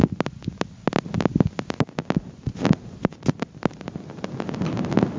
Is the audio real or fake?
real